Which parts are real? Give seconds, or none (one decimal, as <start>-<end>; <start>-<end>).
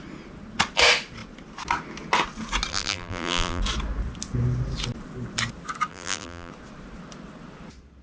0.0-2.7; 3.6-5.9; 6.5-8.0